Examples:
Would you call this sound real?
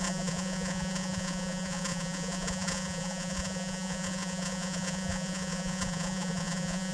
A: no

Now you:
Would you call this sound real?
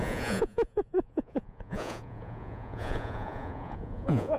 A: no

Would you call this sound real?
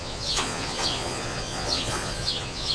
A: no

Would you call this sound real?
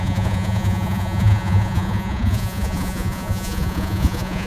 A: no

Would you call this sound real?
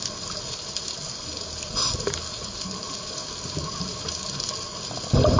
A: yes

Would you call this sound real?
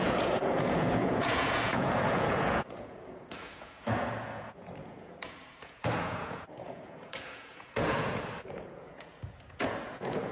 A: no